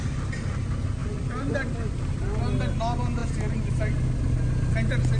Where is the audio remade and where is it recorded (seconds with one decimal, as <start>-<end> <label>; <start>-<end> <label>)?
0.0-1.0 recorded; 1.0-2.4 remade; 2.4-3.2 recorded; 3.2-4.7 remade; 4.7-5.2 recorded